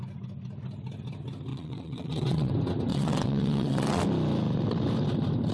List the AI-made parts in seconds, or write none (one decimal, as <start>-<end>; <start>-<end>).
1.5-2.5; 2.9-4.0